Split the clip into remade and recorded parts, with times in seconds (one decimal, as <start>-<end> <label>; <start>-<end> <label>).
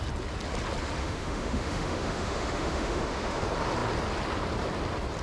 0.0-1.0 recorded; 1.0-3.4 remade; 3.4-5.2 recorded